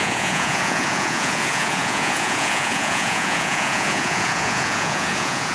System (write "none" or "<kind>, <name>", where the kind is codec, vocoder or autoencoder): vocoder, Vocos